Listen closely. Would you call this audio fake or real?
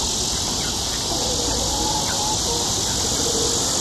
real